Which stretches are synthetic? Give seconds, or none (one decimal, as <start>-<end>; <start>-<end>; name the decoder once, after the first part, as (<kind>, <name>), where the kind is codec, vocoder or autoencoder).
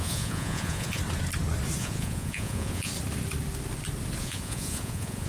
0.0-1.0 (vocoder, Vocos); 1.8-2.9; 4.2-5.3